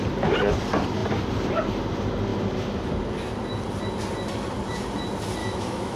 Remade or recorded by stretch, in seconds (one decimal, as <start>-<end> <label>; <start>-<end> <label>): 0.0-5.4 recorded; 5.4-6.0 remade